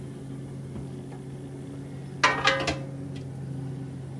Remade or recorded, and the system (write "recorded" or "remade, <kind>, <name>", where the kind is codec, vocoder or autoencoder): recorded